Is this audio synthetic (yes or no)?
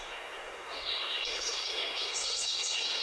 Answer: yes